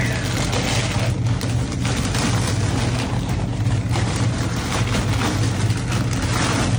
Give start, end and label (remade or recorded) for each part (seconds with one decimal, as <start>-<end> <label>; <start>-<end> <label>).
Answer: 0.0-3.5 recorded; 3.5-4.8 remade; 4.8-6.8 recorded